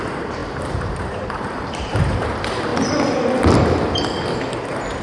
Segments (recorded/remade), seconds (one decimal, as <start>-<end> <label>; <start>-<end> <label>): 0.0-2.7 remade; 2.7-4.3 recorded; 4.3-5.0 remade